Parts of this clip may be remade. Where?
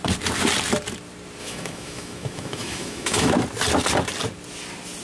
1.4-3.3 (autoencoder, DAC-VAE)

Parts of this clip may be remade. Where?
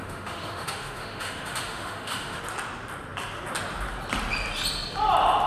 0.0-2.4 (autoencoder, DAC-VAE)